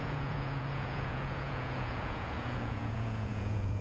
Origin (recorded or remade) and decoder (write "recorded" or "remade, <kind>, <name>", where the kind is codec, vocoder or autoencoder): remade, vocoder, Vocos